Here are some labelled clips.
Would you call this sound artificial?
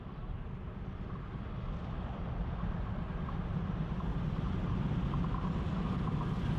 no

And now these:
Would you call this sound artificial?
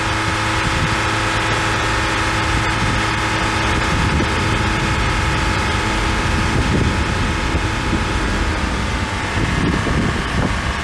no